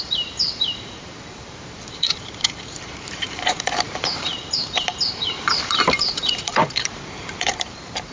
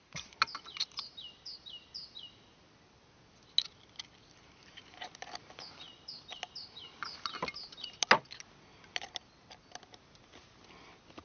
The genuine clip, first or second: second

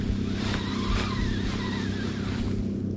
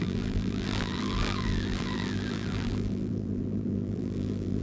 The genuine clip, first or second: first